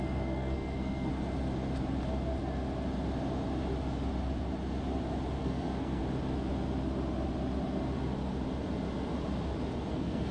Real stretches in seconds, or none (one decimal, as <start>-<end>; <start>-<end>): 1.1-5.4; 6.0-9.9